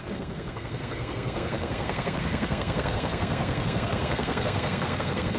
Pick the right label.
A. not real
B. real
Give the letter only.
A